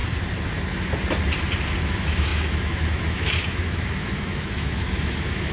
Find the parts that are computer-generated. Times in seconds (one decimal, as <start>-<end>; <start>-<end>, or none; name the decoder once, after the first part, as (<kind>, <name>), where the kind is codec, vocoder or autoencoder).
1.8-5.5 (autoencoder, DAC-VAE)